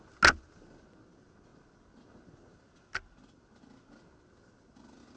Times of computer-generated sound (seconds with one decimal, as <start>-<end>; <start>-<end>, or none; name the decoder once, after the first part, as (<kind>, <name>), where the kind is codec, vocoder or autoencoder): none